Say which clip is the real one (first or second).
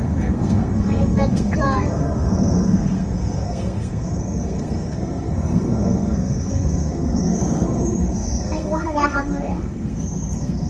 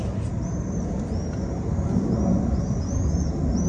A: second